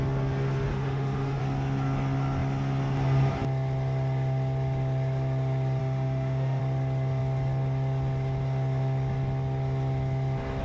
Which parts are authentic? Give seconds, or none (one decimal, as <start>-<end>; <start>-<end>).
0.0-0.7; 1.4-5.8; 6.6-10.6